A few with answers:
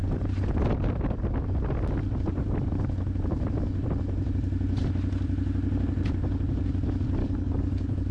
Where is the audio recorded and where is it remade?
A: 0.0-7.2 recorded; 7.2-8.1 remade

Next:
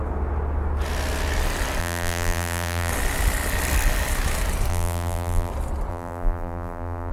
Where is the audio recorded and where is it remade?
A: 0.0-1.8 recorded; 1.8-2.9 remade; 2.9-4.7 recorded; 4.7-5.5 remade; 5.5-5.9 recorded; 5.9-7.1 remade

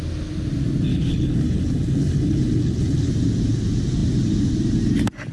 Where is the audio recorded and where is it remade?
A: 0.0-0.9 recorded; 0.9-3.1 remade; 3.1-5.3 recorded

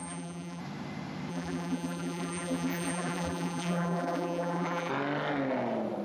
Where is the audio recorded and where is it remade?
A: 0.0-0.6 remade; 0.6-1.3 recorded; 1.3-4.9 remade; 4.9-6.0 recorded

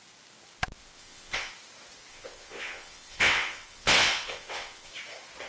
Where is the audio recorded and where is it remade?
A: 0.0-0.8 recorded; 0.8-1.5 remade; 1.5-2.1 recorded; 2.1-4.9 remade; 4.9-5.5 recorded

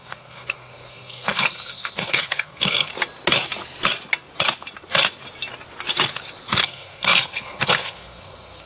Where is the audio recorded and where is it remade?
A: 0.0-2.9 remade; 2.9-6.6 recorded; 6.6-8.7 remade

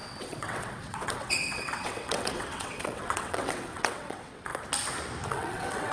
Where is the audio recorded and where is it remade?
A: 0.0-4.5 remade; 4.5-5.3 recorded; 5.3-5.9 remade